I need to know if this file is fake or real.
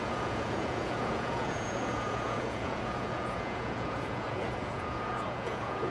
fake